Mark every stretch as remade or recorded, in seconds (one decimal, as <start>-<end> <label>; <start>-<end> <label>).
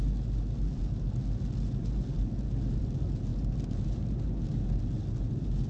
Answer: 0.0-5.7 recorded